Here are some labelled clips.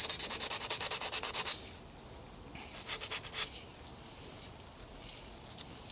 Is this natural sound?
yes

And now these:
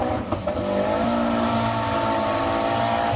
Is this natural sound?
yes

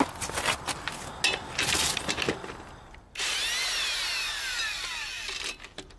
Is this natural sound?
yes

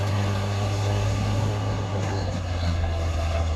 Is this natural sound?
no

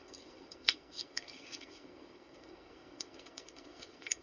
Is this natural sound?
no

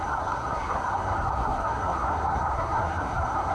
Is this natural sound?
no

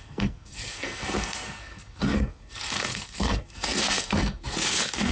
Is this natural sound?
no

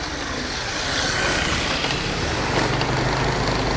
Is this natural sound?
yes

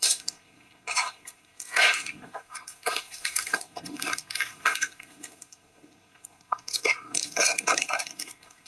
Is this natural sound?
no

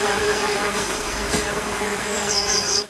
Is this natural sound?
no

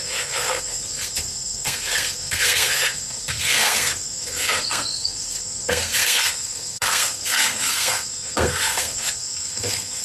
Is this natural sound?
no